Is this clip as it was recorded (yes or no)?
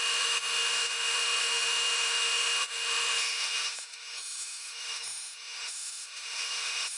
no